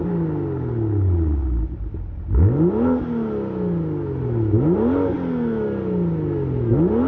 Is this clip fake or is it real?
real